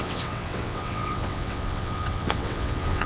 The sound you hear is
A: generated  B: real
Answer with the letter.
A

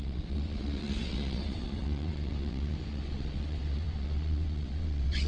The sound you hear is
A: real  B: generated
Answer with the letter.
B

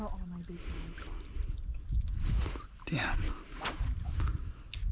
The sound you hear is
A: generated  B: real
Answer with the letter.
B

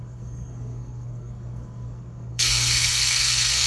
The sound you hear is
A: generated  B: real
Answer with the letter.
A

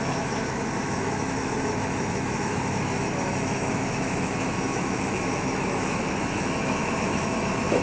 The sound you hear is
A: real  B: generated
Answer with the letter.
B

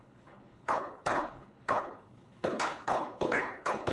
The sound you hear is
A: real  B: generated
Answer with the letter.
B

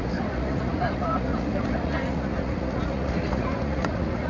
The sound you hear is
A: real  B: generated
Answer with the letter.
B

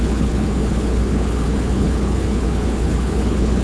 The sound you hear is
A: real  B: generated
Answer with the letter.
B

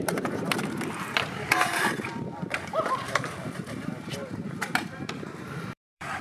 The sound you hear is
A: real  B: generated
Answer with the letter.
B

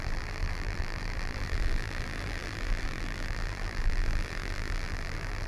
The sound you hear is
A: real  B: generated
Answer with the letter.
B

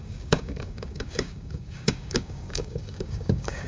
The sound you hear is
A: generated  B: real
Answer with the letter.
A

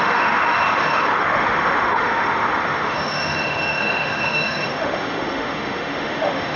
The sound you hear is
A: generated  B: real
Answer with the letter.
A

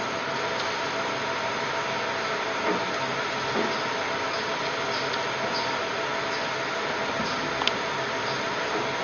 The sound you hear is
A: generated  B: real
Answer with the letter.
B